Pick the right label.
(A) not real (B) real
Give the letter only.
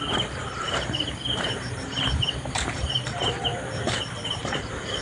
A